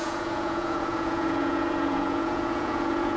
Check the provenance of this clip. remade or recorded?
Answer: remade